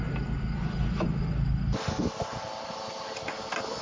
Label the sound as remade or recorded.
recorded